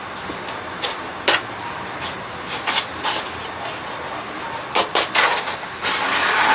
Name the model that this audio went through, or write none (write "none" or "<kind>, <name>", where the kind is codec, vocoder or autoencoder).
none